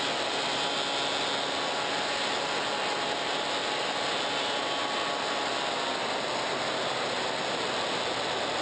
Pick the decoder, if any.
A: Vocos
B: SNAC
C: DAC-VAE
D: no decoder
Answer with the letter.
D